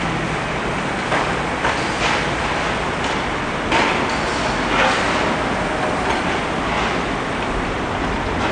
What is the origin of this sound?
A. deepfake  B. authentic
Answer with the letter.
B